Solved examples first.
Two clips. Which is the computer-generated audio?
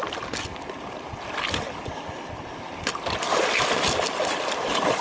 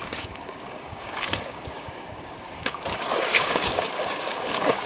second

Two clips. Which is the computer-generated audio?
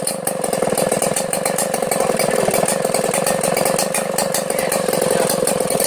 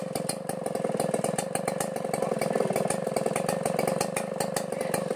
first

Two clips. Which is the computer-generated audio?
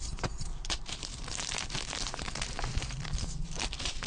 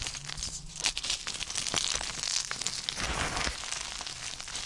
first